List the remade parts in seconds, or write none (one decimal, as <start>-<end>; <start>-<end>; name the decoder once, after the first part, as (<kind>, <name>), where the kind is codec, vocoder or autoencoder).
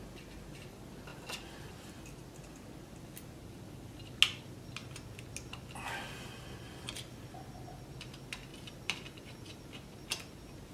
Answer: 1.1-1.7 (vocoder, BigVGAN v2); 8.5-9.6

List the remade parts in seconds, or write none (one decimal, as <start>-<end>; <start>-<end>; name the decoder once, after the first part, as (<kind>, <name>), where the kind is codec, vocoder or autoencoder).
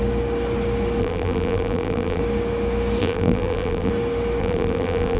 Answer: 1.0-2.2 (vocoder, BigVGAN v2); 3.0-3.9; 4.4-5.2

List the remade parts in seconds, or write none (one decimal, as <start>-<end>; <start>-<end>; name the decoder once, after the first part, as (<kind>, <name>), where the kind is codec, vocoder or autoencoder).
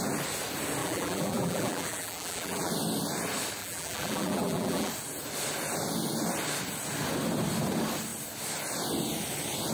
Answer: 0.8-2.7 (vocoder, BigVGAN v2); 3.6-4.9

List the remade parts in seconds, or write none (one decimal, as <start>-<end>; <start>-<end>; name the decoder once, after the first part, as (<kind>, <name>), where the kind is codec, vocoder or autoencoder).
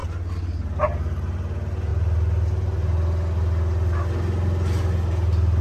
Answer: none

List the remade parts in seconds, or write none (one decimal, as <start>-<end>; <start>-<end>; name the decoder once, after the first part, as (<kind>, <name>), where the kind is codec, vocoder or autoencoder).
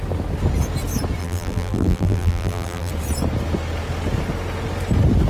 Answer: 1.2-2.9 (vocoder, BigVGAN v2)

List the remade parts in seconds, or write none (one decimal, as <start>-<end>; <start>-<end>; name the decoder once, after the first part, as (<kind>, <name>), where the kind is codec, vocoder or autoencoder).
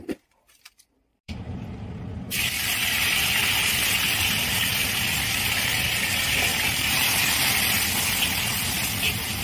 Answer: 1.1-2.0 (vocoder, BigVGAN v2); 6.5-7.4